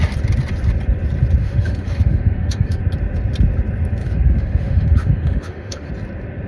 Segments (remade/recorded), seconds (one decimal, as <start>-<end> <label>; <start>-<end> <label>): 0.0-1.4 recorded; 1.4-2.8 remade; 2.8-4.0 recorded; 4.0-5.9 remade; 5.9-6.5 recorded